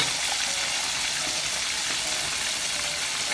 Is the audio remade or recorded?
recorded